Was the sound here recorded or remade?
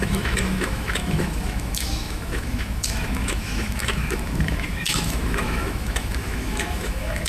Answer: remade